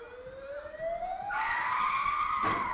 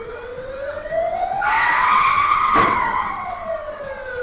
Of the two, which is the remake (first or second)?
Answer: second